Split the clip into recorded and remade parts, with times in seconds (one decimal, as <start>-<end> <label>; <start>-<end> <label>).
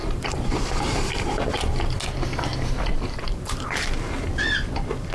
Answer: 0.0-2.0 remade; 2.0-2.5 recorded; 2.5-3.9 remade; 3.9-5.1 recorded